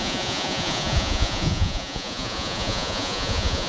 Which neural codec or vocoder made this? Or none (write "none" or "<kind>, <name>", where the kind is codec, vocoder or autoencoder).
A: vocoder, Vocos